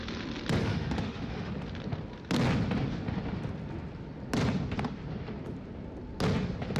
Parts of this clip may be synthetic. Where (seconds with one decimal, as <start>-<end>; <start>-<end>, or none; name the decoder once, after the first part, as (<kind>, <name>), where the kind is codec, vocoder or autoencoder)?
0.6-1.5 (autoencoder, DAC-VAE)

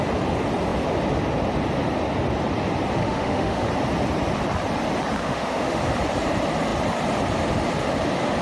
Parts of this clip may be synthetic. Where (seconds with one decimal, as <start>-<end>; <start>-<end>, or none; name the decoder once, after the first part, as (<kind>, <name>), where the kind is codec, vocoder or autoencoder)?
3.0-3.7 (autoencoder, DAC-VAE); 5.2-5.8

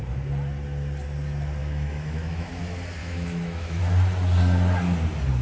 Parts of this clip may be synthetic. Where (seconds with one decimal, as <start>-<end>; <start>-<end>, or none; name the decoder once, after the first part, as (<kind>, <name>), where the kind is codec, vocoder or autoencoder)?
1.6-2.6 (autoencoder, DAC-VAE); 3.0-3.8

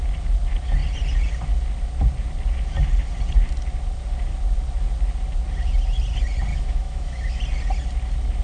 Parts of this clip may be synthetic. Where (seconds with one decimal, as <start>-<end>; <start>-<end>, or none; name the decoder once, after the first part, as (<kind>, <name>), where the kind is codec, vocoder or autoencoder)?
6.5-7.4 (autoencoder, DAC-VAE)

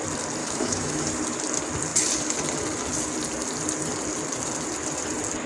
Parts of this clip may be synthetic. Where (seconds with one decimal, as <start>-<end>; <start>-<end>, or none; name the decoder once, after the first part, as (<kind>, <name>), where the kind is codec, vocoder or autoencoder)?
0.4-1.0 (autoencoder, DAC-VAE)

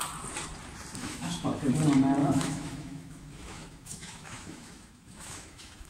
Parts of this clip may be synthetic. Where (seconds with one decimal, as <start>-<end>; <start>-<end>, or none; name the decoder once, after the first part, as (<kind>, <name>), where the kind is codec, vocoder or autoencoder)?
1.0-1.7 (autoencoder, DAC-VAE); 2.2-5.9